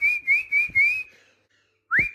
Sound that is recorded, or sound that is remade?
recorded